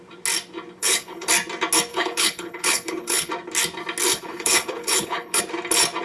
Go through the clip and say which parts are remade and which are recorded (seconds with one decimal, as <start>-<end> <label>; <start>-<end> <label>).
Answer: 0.0-0.8 recorded; 0.8-1.3 remade; 1.3-1.9 recorded; 1.9-3.3 remade; 3.3-4.1 recorded; 4.1-5.4 remade; 5.4-6.0 recorded